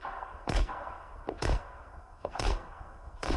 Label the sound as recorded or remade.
remade